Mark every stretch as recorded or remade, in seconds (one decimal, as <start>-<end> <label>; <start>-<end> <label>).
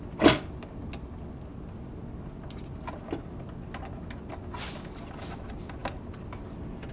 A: 0.0-6.9 recorded